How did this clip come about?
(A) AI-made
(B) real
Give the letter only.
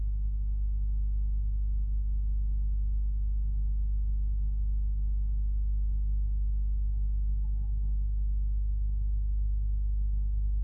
A